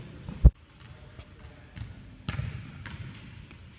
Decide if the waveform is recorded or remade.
recorded